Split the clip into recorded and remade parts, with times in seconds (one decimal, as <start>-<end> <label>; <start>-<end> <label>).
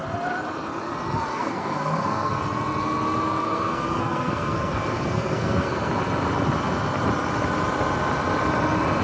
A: 0.0-1.3 recorded; 1.3-2.4 remade; 2.4-3.4 recorded; 3.4-5.9 remade; 5.9-9.0 recorded